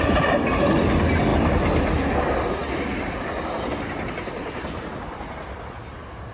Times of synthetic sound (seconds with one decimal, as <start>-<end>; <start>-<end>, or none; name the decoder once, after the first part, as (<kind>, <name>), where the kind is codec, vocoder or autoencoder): 1.3-2.1 (vocoder, BigVGAN v2)